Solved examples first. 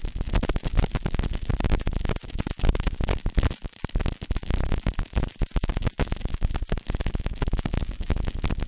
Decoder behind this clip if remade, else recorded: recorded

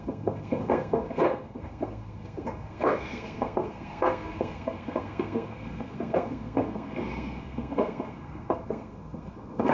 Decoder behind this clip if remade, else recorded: remade, codec, SNAC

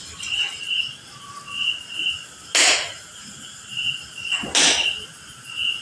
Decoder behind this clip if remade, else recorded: recorded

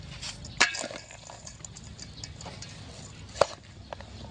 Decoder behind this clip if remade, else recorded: recorded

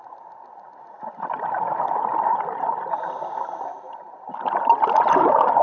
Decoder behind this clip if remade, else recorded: recorded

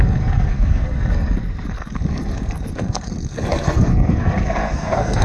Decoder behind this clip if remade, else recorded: remade, codec, SNAC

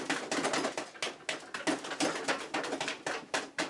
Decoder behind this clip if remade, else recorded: recorded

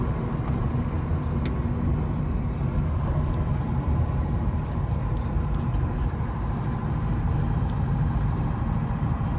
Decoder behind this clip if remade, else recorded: recorded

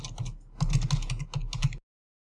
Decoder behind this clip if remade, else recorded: recorded